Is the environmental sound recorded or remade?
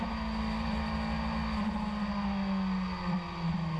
recorded